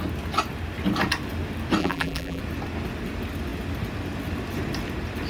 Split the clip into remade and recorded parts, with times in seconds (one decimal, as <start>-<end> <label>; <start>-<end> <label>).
0.0-1.8 recorded; 1.8-2.4 remade; 2.4-5.3 recorded

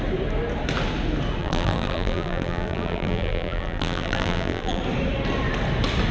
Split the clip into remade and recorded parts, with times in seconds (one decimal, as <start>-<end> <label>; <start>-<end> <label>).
0.0-1.4 recorded; 1.4-4.8 remade; 4.8-6.1 recorded

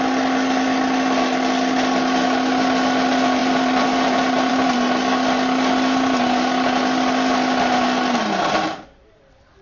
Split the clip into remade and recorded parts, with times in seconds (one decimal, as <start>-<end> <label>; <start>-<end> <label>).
0.0-3.4 recorded; 3.4-4.5 remade; 4.5-9.6 recorded

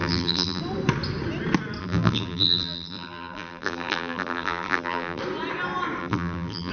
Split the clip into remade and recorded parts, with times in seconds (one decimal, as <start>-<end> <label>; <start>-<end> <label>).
0.0-0.6 remade; 0.6-1.8 recorded; 1.8-5.2 remade; 5.2-6.0 recorded; 6.0-6.7 remade

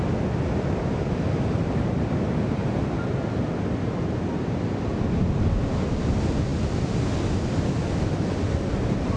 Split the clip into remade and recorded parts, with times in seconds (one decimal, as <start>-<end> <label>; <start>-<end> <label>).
0.0-2.6 recorded; 2.6-5.4 remade; 5.4-9.2 recorded

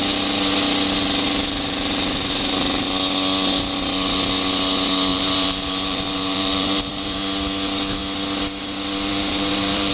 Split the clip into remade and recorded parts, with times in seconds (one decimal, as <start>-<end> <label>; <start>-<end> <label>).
0.0-5.1 recorded; 5.1-7.2 remade; 7.2-9.1 recorded; 9.1-9.9 remade

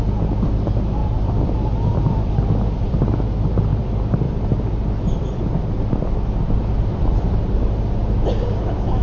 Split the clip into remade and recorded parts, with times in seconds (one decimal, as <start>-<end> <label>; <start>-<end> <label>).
0.0-1.0 recorded; 1.0-3.0 remade; 3.0-3.7 recorded; 3.7-5.5 remade; 5.5-6.7 recorded; 6.7-7.4 remade; 7.4-9.0 recorded